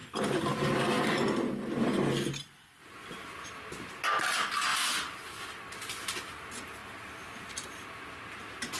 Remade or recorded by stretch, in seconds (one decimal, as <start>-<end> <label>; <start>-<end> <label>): 0.0-8.8 recorded